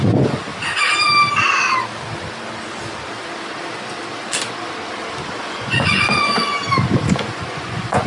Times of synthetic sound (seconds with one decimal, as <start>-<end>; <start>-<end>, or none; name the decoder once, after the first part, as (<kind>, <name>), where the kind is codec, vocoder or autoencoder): 0.0-0.5 (vocoder, Vocos); 5.4-6.6; 7.2-8.1